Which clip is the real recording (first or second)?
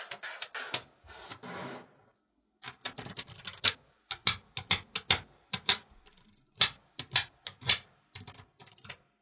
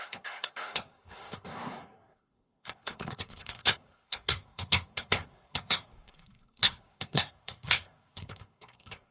first